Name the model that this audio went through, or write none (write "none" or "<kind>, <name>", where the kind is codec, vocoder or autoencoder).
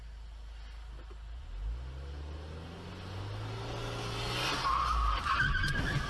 none